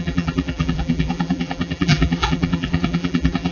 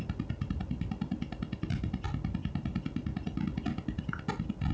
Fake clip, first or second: first